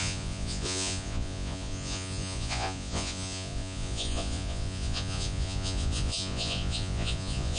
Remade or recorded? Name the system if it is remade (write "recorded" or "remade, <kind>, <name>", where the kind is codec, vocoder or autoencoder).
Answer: remade, vocoder, Vocos